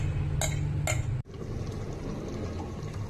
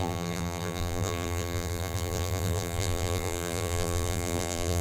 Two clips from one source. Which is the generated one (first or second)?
second